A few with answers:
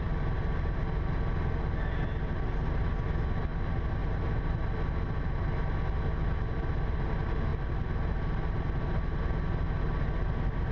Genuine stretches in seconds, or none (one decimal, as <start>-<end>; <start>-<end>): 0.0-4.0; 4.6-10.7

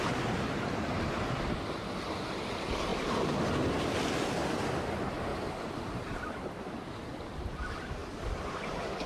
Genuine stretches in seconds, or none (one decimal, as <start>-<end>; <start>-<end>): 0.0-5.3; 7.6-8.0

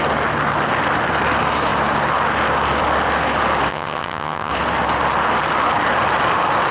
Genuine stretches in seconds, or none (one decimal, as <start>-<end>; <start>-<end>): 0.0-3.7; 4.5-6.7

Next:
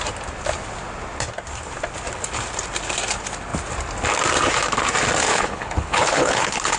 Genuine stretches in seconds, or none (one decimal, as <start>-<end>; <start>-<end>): 0.0-5.3